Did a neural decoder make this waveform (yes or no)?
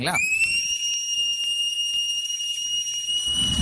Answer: no